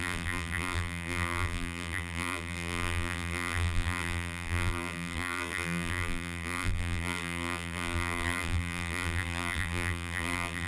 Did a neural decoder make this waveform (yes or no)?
yes